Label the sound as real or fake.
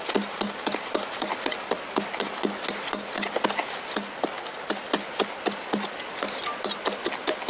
real